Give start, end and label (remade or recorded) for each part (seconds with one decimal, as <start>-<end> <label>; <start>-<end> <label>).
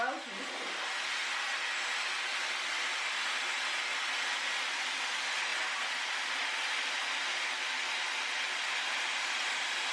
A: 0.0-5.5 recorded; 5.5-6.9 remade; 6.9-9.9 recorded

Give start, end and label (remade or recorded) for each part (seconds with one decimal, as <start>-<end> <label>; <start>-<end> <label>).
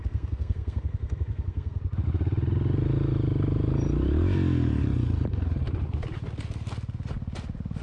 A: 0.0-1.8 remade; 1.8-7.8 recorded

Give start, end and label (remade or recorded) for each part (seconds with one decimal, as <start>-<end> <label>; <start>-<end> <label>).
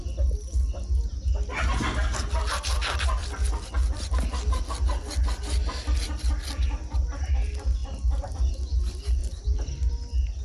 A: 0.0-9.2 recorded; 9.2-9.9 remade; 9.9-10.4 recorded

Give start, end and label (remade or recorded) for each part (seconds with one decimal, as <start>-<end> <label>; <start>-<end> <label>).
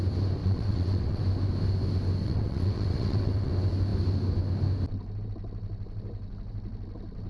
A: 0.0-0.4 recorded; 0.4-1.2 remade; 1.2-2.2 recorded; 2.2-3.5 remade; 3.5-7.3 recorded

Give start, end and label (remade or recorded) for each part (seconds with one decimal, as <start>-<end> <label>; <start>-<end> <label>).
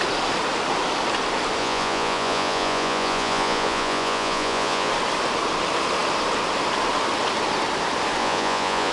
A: 0.0-1.6 recorded; 1.6-4.9 remade; 4.9-8.2 recorded; 8.2-8.9 remade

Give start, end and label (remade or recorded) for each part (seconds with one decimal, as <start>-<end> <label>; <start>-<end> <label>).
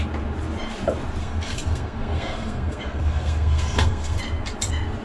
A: 0.0-1.2 recorded; 1.2-4.2 remade; 4.2-5.0 recorded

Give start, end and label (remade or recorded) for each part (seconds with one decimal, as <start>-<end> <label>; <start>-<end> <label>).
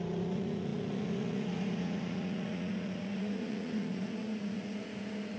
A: 0.0-5.4 remade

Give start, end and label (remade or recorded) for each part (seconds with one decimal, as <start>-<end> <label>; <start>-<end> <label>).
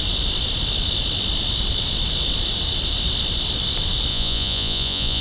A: 0.0-4.1 recorded; 4.1-5.2 remade